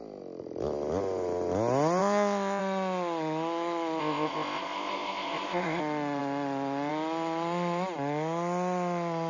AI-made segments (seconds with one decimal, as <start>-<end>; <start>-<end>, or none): 2.0-2.6; 4.0-5.8